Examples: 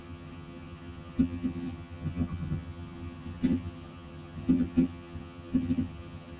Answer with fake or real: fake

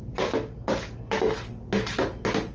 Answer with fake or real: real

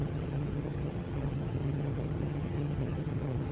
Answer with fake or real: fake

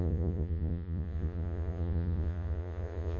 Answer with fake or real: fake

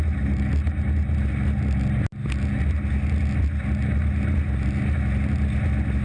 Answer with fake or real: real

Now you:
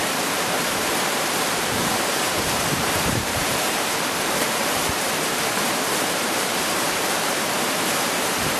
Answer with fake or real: fake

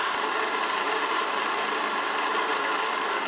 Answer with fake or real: real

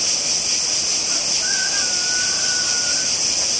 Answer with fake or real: real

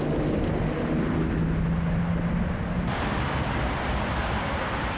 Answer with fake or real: real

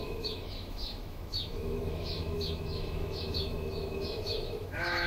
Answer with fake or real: fake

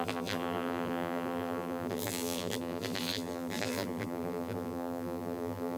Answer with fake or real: fake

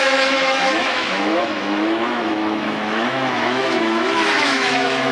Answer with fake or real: fake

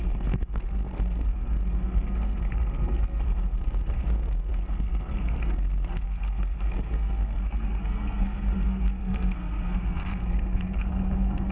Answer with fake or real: fake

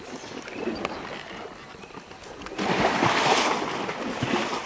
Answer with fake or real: real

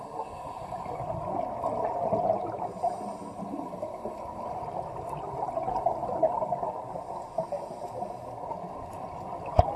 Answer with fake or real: real